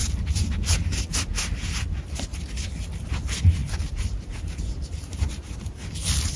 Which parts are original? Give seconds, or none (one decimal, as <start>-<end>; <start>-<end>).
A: 0.0-3.6; 5.9-6.4